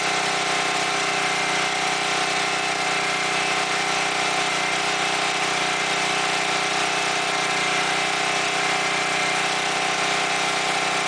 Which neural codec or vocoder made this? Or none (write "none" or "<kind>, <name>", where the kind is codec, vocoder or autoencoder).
none